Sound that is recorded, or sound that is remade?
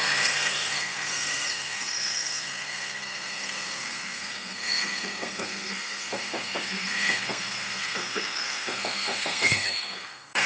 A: remade